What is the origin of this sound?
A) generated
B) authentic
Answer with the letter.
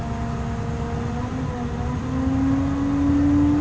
B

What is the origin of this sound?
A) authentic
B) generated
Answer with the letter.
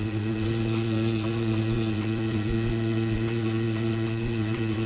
B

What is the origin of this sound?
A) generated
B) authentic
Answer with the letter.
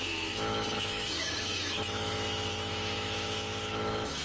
A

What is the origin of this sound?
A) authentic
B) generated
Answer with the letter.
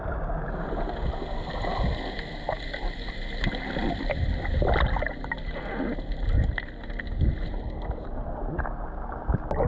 A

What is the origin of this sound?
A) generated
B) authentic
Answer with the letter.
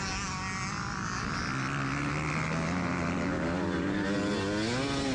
B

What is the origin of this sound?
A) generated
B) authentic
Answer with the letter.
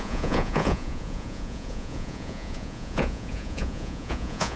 A